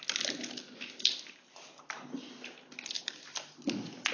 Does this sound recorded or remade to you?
recorded